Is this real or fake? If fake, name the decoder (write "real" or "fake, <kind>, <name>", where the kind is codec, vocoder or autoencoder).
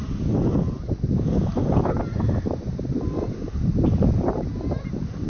real